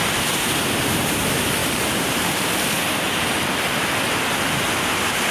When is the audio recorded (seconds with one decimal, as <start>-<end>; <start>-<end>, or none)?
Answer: 0.0-5.3